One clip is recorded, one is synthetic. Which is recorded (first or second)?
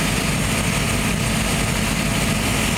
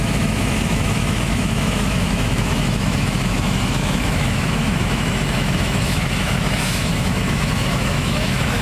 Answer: first